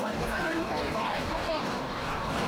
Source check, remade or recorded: remade